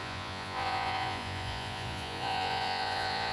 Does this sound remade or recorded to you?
remade